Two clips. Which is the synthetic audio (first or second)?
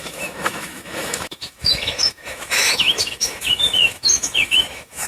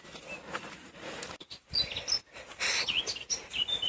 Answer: first